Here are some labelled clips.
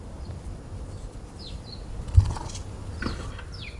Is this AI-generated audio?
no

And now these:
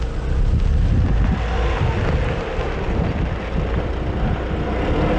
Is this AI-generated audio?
no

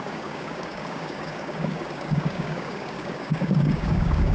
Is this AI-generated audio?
yes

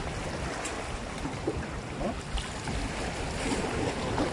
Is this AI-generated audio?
yes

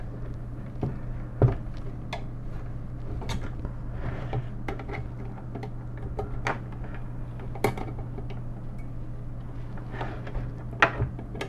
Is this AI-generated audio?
no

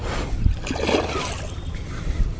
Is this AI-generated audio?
no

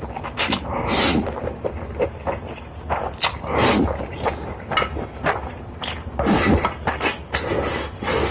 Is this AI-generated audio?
no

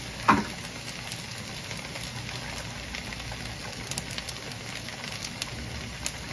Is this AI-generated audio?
no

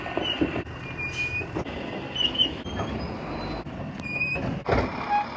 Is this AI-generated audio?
no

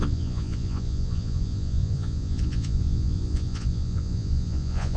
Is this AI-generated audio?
yes